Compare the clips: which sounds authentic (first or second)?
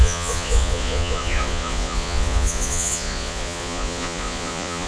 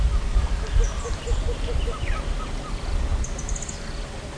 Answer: second